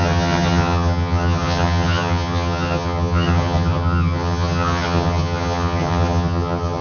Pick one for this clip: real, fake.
fake